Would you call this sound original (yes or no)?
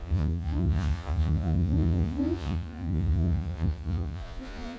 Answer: no